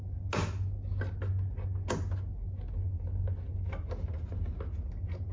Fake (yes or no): no